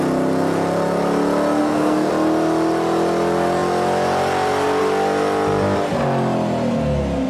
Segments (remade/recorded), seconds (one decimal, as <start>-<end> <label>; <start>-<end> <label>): 0.0-1.6 recorded; 1.6-2.1 remade; 2.1-7.3 recorded